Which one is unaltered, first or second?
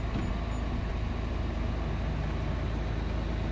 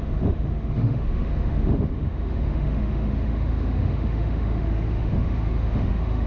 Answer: first